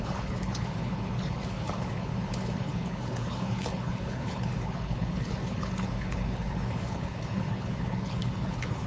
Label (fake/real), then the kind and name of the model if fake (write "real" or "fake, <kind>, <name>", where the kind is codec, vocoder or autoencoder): fake, codec, HILCodec